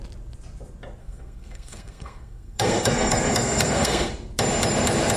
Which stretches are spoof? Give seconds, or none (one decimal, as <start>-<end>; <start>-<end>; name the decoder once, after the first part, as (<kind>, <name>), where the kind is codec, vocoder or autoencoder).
1.0-4.1 (codec, SNAC)